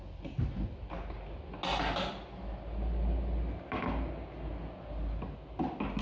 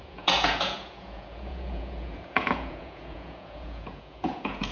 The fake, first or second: second